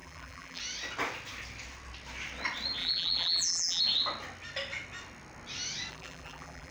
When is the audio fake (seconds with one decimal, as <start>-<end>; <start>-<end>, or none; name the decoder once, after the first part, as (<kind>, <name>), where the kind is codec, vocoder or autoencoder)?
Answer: 0.0-0.6 (vocoder, BigVGAN v2); 2.8-3.8; 5.9-6.7